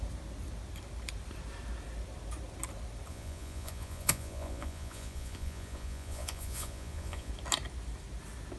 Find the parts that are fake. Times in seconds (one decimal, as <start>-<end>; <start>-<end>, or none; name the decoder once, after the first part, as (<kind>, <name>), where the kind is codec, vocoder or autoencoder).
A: 3.1-7.3 (vocoder, Vocos)